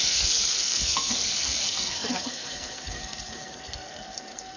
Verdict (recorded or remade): remade